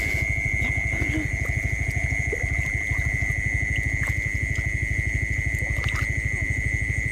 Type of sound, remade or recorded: recorded